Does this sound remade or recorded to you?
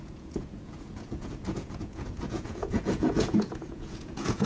remade